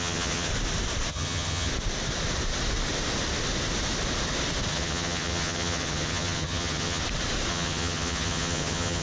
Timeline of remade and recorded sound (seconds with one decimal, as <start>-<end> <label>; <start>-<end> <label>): 0.0-0.5 remade; 0.5-1.1 recorded; 1.1-1.7 remade; 1.7-4.7 recorded; 4.7-7.0 remade; 7.0-7.5 recorded; 7.5-9.0 remade